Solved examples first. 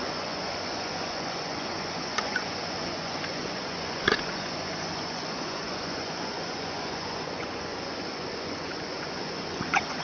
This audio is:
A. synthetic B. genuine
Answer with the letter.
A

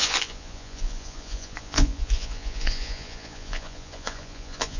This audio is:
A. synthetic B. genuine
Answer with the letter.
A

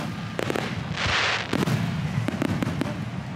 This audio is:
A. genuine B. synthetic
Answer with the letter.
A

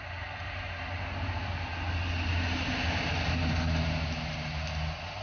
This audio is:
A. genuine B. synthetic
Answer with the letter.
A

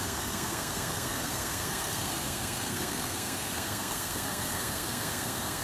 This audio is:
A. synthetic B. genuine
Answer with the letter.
A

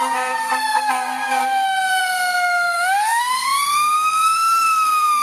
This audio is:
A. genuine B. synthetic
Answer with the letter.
B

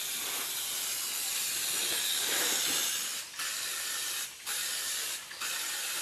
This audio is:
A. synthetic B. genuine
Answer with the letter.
A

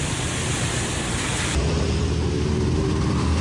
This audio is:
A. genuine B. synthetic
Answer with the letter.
A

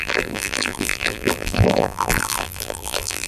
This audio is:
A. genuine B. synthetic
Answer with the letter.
B